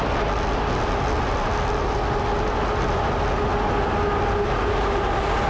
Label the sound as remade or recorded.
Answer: recorded